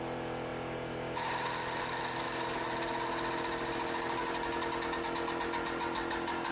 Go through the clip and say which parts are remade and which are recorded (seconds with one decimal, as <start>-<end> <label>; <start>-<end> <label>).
0.0-6.5 recorded